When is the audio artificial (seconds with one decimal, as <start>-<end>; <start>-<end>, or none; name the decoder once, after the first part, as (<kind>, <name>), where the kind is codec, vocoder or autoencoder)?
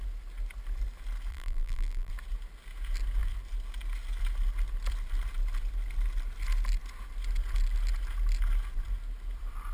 1.3-2.1 (vocoder, BigVGAN v2)